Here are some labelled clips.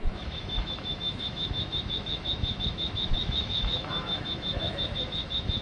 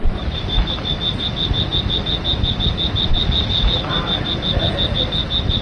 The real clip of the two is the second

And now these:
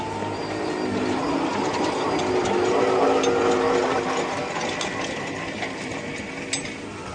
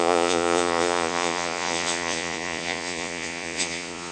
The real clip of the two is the first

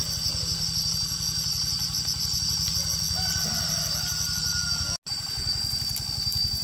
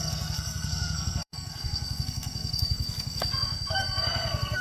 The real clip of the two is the first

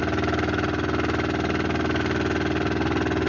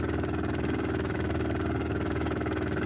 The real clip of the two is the first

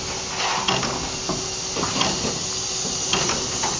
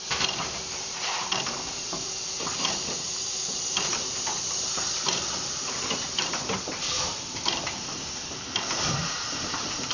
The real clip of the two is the first